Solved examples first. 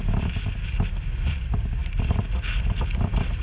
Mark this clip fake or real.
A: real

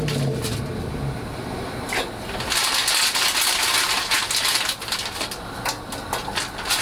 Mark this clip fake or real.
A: real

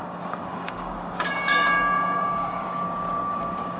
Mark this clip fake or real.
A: fake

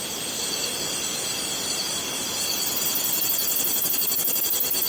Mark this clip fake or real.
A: real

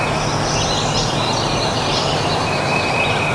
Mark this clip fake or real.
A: real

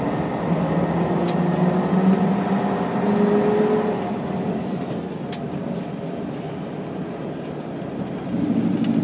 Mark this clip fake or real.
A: real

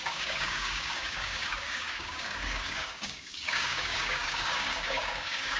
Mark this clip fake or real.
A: fake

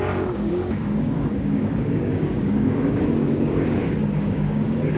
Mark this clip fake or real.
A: fake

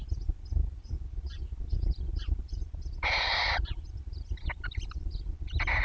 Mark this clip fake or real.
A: real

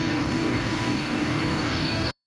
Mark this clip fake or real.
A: fake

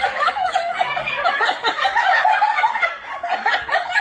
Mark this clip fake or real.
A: fake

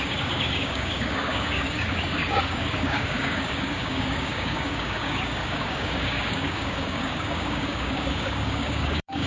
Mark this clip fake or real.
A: fake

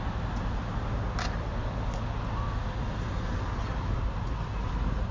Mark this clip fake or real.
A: real